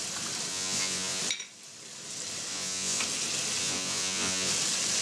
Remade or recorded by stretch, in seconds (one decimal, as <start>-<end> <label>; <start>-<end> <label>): 0.0-0.5 recorded; 0.5-1.2 remade; 1.2-2.5 recorded; 2.5-3.0 remade; 3.0-3.6 recorded; 3.6-4.5 remade; 4.5-5.0 recorded